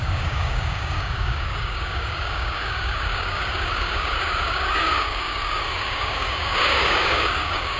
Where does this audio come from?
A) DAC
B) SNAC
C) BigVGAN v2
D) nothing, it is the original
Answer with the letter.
A